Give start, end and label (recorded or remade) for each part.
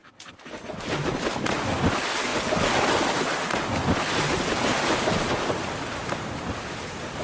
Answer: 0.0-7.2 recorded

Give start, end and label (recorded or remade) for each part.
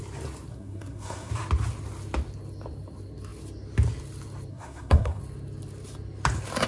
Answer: 0.0-0.5 recorded; 0.5-1.3 remade; 1.3-4.5 recorded; 4.5-5.2 remade; 5.2-6.7 recorded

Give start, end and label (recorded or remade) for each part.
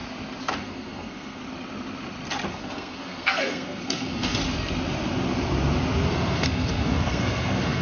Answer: 0.0-0.6 recorded; 0.6-1.4 remade; 1.4-2.5 recorded; 2.5-4.4 remade; 4.4-6.1 recorded; 6.1-7.8 remade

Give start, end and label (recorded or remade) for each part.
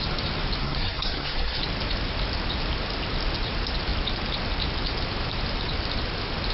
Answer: 0.0-0.6 recorded; 0.6-1.6 remade; 1.6-6.5 recorded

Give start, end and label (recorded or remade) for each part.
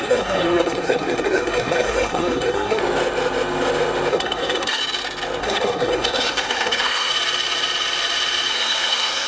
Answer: 0.0-2.8 remade; 2.8-4.1 recorded; 4.1-4.8 remade; 4.8-5.4 recorded; 5.4-7.1 remade; 7.1-8.5 recorded; 8.5-9.3 remade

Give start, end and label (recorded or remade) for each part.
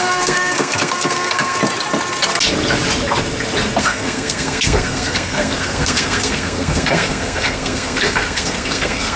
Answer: 0.0-1.6 remade; 1.6-3.8 recorded; 3.8-9.2 remade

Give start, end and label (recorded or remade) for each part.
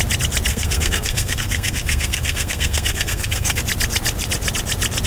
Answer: 0.0-0.5 recorded; 0.5-3.6 remade; 3.6-5.1 recorded